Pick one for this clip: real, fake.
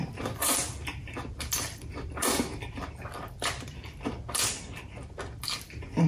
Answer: fake